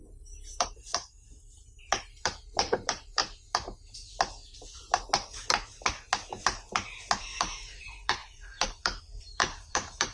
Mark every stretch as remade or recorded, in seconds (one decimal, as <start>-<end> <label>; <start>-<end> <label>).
0.0-3.2 remade; 3.2-7.2 recorded; 7.2-10.1 remade